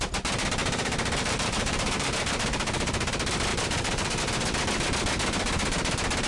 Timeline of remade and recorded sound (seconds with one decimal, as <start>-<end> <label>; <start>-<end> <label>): 0.0-0.6 recorded; 0.6-3.1 remade; 3.1-3.5 recorded; 3.5-4.2 remade; 4.2-6.3 recorded